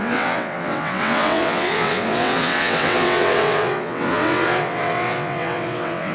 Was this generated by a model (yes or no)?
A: yes